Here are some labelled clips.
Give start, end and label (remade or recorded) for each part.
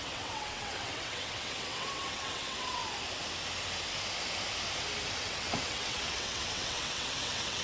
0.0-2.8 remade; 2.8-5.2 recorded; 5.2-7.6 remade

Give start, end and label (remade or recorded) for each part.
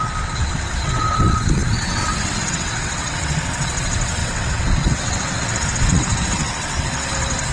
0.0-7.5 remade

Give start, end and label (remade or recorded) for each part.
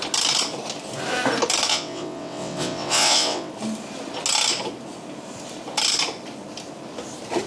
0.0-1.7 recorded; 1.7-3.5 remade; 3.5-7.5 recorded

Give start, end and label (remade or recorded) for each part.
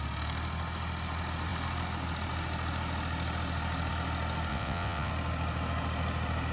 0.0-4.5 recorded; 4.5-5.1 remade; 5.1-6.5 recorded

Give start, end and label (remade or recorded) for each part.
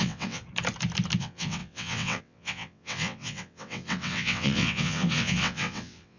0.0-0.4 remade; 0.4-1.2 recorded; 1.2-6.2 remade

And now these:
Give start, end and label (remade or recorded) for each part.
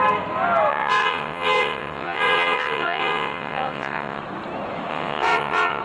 0.0-0.7 recorded; 0.7-4.2 remade; 4.2-4.9 recorded; 4.9-5.8 remade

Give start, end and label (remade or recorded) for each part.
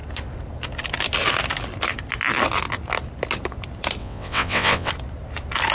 0.0-4.0 recorded; 4.0-4.9 remade; 4.9-5.7 recorded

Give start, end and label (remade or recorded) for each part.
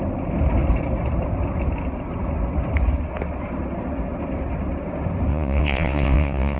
0.0-5.3 recorded; 5.3-6.6 remade